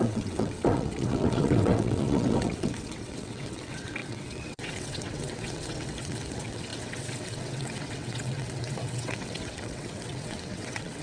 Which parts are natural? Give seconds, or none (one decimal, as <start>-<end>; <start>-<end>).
none